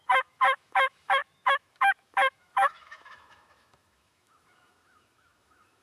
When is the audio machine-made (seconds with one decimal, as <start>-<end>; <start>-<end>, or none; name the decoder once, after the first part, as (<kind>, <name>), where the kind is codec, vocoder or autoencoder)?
0.0-5.8 (autoencoder, DAC-VAE)